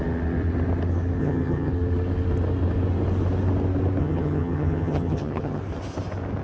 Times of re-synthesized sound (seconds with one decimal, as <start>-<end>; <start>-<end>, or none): 1.2-1.7; 4.0-5.6